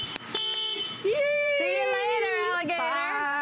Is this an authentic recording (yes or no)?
no